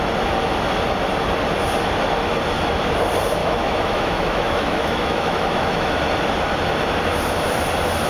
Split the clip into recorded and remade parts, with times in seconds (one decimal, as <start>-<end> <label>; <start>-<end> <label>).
0.0-3.4 recorded; 3.4-6.0 remade; 6.0-8.1 recorded